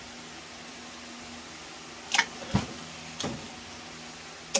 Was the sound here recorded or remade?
recorded